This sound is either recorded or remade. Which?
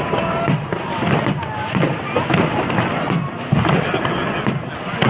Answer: recorded